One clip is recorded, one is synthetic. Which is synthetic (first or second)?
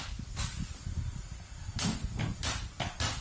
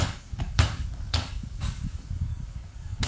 second